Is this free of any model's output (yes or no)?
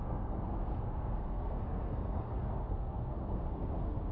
no